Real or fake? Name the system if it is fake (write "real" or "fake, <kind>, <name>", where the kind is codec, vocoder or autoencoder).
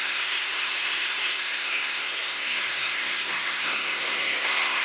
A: fake, codec, SNAC